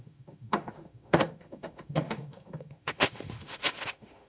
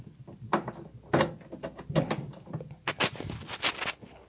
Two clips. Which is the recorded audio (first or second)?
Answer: second